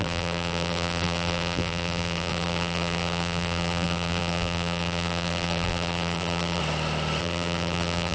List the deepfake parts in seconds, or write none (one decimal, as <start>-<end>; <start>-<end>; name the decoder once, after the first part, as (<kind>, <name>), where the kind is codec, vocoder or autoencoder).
0.0-6.6 (vocoder, BigVGAN v2); 7.2-8.1